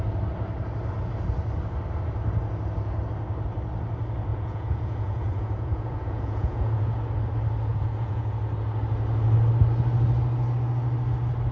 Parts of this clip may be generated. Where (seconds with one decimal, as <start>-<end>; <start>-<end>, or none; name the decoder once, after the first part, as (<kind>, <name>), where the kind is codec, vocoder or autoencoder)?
4.3-7.0 (vocoder, Vocos); 7.7-8.3